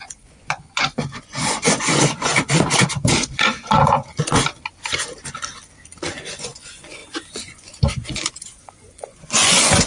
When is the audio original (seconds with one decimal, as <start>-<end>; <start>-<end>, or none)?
2.3-2.9; 4.0-6.1

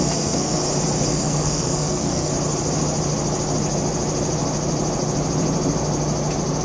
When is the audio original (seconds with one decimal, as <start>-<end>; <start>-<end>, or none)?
0.6-1.1; 2.3-6.6

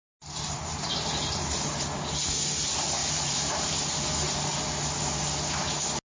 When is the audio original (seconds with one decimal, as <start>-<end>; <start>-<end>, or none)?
2.4-3.0; 3.7-6.1

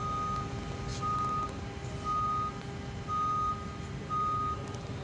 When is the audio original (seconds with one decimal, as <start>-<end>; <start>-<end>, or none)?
0.0-5.0

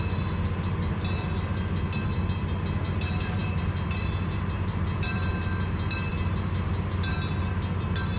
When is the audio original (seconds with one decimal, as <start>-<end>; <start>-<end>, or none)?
0.0-3.4; 5.3-8.2

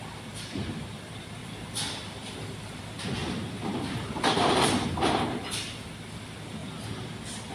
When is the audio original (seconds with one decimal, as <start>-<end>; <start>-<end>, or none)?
0.0-1.4; 5.9-7.5

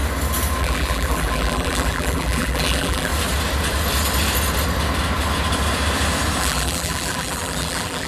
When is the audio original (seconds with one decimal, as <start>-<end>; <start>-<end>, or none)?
0.0-0.6; 3.1-6.4